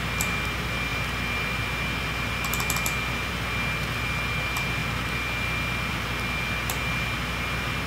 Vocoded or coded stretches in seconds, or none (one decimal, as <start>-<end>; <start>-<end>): none